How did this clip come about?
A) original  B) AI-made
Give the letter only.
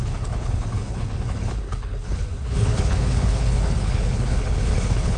B